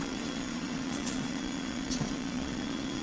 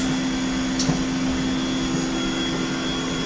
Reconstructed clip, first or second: first